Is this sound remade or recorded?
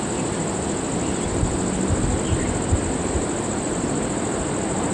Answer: recorded